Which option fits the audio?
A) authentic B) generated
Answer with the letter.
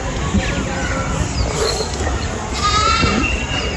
A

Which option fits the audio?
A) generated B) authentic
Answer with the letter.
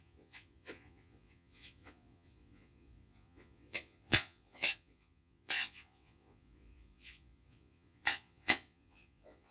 A